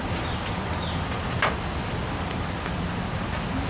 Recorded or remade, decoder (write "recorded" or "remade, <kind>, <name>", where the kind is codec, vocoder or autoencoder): recorded